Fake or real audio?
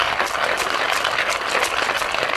real